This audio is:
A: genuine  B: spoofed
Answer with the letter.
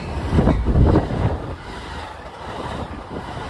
B